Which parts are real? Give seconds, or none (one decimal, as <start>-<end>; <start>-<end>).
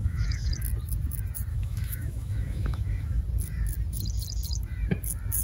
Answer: 0.5-1.5; 3.2-5.4